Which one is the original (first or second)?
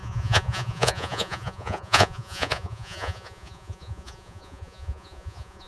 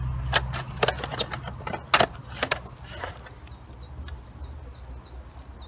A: second